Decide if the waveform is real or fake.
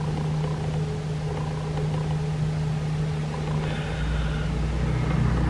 real